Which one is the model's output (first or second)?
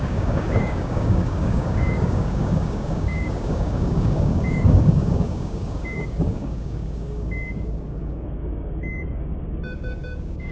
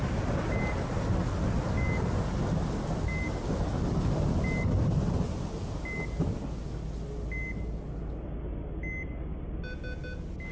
first